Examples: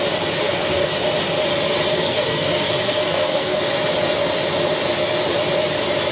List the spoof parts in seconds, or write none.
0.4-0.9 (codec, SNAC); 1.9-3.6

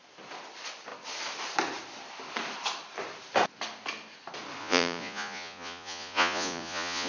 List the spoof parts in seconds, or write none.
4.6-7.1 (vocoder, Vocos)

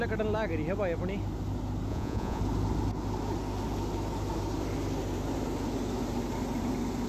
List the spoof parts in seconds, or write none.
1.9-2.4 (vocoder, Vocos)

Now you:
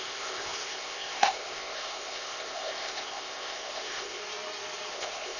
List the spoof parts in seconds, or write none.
0.0-4.2 (codec, ZipCodec); 4.9-5.4

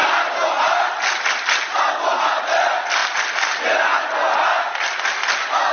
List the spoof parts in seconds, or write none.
none

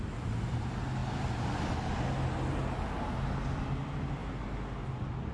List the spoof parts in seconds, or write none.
none